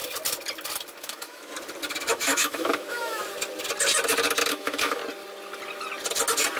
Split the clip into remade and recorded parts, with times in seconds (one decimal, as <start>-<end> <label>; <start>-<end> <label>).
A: 0.0-1.0 recorded; 1.0-1.5 remade; 1.5-2.1 recorded; 2.1-3.2 remade; 3.2-4.5 recorded; 4.5-5.0 remade; 5.0-6.6 recorded